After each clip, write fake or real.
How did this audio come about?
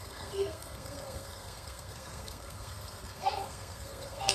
fake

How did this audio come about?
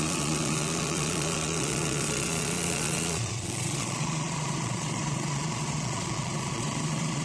fake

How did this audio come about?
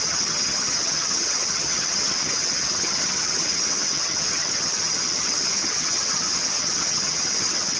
fake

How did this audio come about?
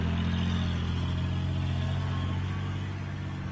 real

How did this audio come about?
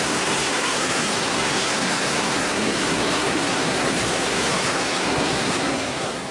fake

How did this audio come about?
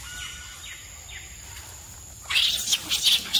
real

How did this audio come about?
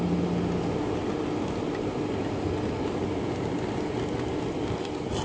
real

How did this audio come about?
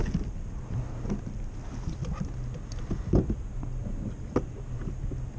real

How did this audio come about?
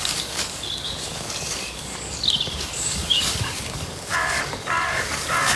fake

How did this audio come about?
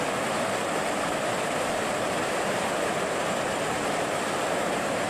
fake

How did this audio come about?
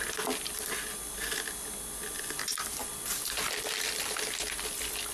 real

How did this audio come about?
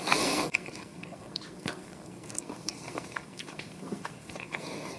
fake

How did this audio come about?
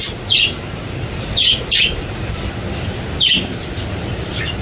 real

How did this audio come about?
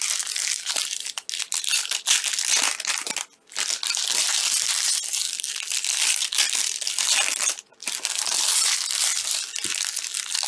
real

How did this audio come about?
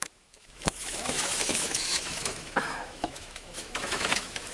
fake